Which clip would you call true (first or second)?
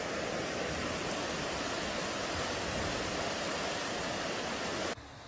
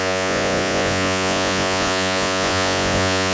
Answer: first